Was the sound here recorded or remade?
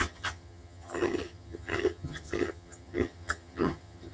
remade